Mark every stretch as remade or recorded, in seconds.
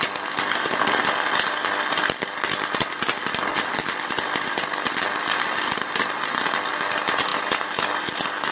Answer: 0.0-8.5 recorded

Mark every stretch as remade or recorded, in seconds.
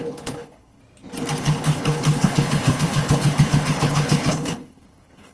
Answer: 0.0-0.8 remade; 0.8-1.4 recorded; 1.4-5.3 remade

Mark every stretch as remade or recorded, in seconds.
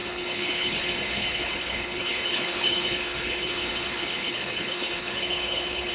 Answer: 0.0-5.9 remade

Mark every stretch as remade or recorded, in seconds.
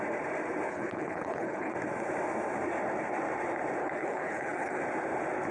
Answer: 0.0-0.7 recorded; 0.7-1.7 remade; 1.7-3.8 recorded; 3.8-4.8 remade; 4.8-5.5 recorded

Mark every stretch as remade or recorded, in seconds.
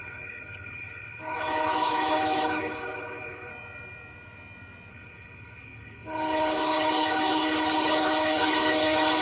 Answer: 0.0-3.5 remade; 3.5-4.9 recorded; 4.9-9.2 remade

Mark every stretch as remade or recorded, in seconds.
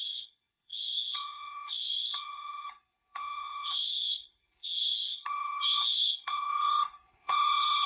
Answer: 0.0-7.9 remade